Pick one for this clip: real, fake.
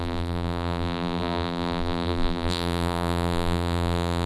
fake